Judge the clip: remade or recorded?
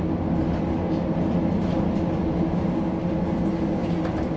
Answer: recorded